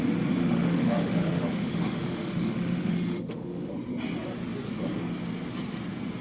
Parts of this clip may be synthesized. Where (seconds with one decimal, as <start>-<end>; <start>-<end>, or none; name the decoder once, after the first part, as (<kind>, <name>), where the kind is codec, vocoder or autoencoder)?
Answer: 0.4-3.7 (autoencoder, DAC-VAE)